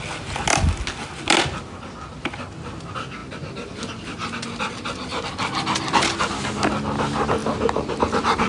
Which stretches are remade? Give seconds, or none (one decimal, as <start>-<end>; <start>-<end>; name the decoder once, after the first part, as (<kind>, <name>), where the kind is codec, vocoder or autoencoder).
none